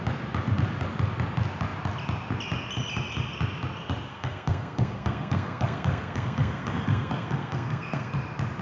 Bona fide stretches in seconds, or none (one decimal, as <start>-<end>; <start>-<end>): 0.0-4.1; 8.1-8.6

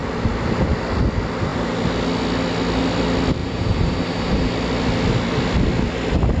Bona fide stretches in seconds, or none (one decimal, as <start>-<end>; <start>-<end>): 0.0-3.4; 4.5-6.4

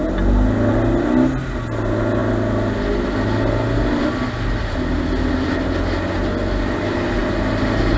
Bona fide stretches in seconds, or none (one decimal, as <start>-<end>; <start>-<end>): 0.0-8.0